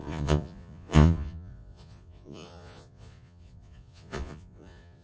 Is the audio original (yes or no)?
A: no